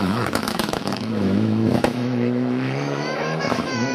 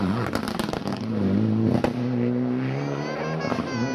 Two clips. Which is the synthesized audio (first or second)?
first